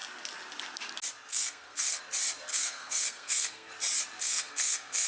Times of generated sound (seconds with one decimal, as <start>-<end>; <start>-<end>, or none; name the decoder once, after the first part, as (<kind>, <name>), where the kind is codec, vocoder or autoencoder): 1.3-2.0 (codec, SNAC); 2.5-3.7; 4.2-5.1

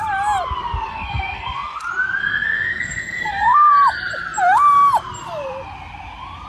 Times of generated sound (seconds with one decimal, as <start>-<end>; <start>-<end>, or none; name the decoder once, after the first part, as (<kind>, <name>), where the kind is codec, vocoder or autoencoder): 0.9-1.8 (codec, SNAC); 2.2-3.7

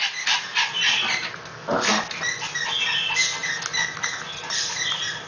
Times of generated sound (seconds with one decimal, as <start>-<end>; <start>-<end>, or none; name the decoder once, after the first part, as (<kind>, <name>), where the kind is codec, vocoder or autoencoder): none

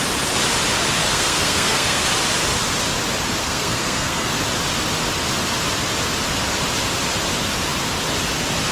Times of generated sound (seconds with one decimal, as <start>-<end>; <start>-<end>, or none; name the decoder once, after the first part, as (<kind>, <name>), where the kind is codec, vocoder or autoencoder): 1.0-2.0 (codec, SNAC); 3.4-4.3

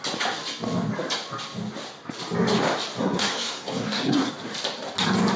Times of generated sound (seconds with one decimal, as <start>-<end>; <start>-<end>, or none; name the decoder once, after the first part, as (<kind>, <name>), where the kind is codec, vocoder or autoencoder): 3.0-4.3 (codec, SNAC)

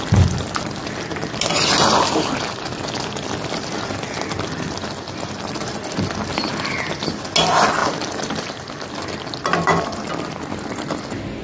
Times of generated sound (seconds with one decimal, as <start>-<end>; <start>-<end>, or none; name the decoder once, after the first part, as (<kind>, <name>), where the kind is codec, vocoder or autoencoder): none

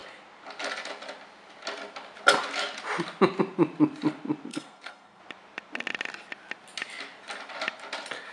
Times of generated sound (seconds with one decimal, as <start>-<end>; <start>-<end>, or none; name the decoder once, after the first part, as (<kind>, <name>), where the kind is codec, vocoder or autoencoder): 4.5-5.2 (codec, SNAC)

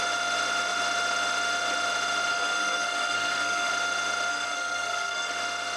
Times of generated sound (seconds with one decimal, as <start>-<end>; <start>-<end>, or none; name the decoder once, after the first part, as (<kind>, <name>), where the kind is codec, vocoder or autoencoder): 2.3-3.7 (codec, SNAC); 4.3-5.3